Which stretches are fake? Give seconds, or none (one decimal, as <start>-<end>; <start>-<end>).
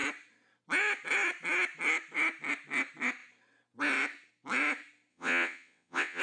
5.1-6.2